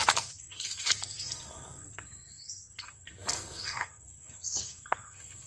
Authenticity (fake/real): fake